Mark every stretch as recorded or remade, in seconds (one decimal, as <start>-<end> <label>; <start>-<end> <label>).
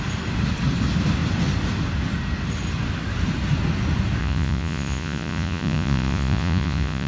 0.0-4.2 recorded; 4.2-7.1 remade